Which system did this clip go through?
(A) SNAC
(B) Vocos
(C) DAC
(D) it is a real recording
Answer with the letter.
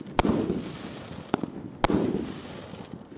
D